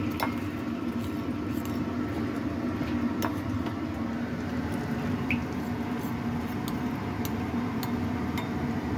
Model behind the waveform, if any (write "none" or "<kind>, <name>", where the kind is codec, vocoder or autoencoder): none